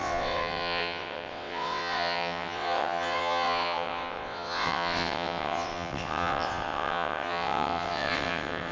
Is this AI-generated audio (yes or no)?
yes